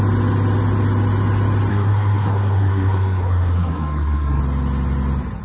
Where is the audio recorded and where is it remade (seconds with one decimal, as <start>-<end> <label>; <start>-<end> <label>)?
0.0-1.7 recorded; 1.7-4.4 remade; 4.4-5.4 recorded